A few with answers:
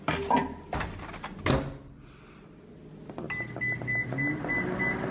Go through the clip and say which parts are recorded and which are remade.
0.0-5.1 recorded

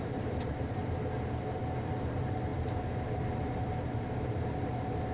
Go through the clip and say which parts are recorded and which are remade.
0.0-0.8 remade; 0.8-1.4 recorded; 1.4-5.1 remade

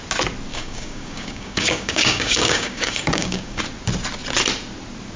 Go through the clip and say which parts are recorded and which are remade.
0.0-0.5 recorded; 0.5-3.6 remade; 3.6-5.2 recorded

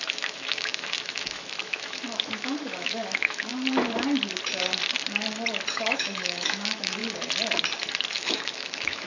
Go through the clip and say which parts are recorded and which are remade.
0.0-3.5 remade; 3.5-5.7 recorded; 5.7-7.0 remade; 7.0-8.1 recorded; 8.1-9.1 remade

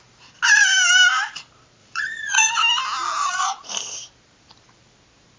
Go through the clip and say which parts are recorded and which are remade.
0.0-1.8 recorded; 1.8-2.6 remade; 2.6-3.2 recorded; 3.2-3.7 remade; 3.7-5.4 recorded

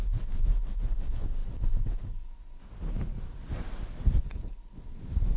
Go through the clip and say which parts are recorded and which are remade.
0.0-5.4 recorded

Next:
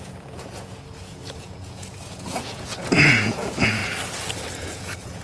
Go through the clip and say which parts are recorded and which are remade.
0.0-3.8 remade; 3.8-4.6 recorded; 4.6-5.2 remade

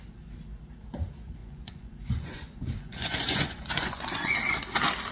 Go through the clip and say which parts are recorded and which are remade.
0.0-1.4 recorded; 1.4-4.3 remade; 4.3-5.1 recorded